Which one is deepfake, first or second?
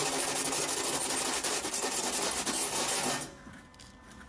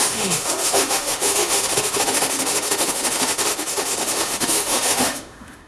second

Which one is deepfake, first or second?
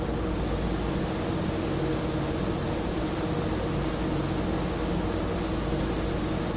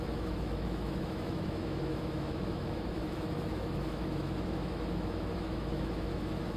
second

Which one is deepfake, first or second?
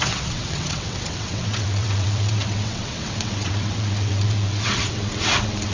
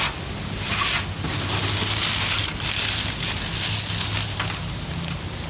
first